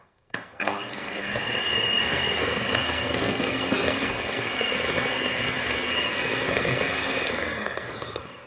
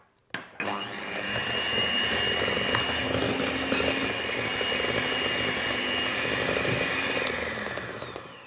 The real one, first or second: second